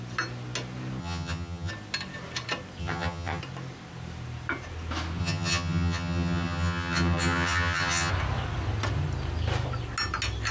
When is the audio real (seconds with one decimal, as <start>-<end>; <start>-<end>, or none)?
0.0-1.0; 1.7-2.8; 3.4-5.2; 8.1-10.5